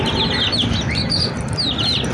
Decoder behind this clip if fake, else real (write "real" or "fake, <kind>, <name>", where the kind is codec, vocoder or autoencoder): real